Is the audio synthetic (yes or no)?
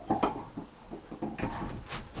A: no